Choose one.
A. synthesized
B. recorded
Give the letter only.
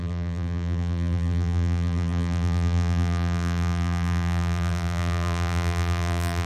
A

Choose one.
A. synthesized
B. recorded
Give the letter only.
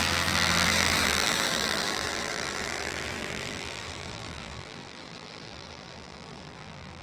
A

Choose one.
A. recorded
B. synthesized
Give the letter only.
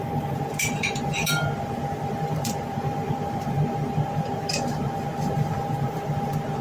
B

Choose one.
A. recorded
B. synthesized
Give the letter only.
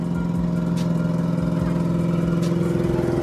A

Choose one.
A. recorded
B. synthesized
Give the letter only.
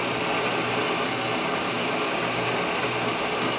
A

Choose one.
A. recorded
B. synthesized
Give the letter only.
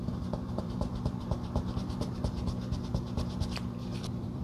B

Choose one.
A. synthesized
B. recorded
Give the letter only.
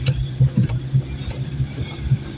A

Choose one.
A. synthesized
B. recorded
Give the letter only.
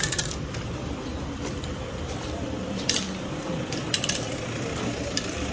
A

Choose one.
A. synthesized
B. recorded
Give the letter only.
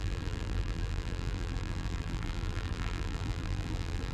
A